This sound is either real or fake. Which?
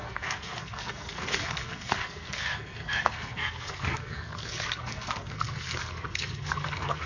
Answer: fake